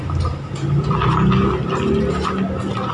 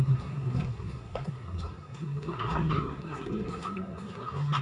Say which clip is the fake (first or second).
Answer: second